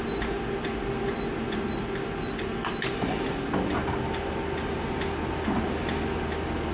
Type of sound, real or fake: real